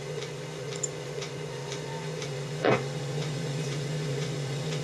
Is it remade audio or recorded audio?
remade